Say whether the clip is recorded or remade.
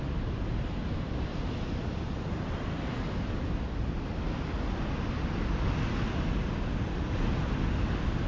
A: recorded